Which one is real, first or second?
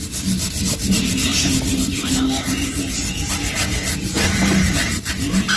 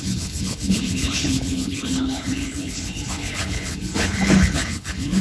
first